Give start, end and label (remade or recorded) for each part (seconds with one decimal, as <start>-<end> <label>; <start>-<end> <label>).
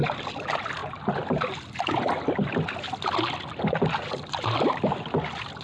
0.0-5.6 recorded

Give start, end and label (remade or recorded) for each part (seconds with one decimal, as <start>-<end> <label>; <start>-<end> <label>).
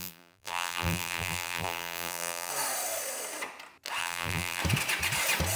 0.0-2.5 remade; 2.5-4.0 recorded; 4.0-4.6 remade; 4.6-5.6 recorded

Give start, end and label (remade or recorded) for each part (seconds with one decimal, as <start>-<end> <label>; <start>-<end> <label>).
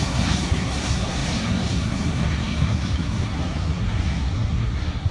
0.0-5.1 remade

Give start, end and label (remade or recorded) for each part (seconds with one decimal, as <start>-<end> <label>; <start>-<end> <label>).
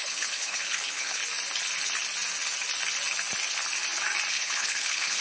0.0-1.2 remade; 1.2-4.3 recorded; 4.3-5.2 remade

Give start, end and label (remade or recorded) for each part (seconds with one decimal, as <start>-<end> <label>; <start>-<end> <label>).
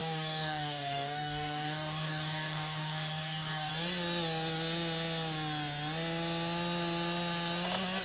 0.0-3.7 remade; 3.7-8.0 recorded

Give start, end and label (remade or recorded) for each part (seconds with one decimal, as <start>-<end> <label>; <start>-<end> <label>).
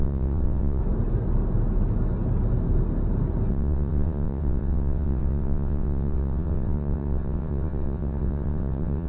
0.0-0.8 remade; 0.8-3.5 recorded; 3.5-9.1 remade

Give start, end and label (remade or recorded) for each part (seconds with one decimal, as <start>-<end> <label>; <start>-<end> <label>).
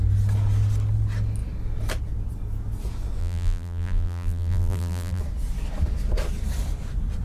0.0-3.2 recorded; 3.2-5.2 remade; 5.2-7.2 recorded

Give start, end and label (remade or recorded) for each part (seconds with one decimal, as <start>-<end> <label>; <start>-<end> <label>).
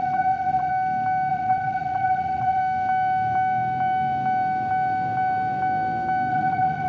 0.0-0.7 remade; 0.7-1.3 recorded; 1.3-2.6 remade; 2.6-6.3 recorded; 6.3-6.9 remade